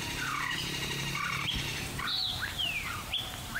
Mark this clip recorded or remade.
remade